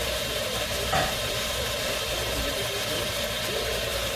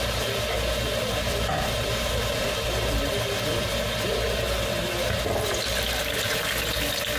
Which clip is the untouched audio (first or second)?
second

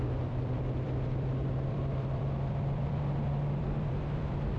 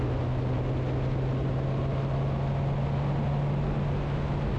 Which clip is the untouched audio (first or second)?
second